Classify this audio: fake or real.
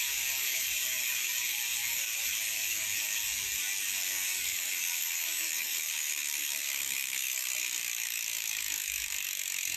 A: fake